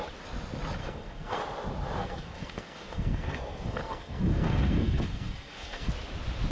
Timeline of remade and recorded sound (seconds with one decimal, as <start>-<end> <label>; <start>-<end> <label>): 0.0-0.8 recorded; 0.8-1.4 remade; 1.4-2.0 recorded; 2.0-5.9 remade; 5.9-6.5 recorded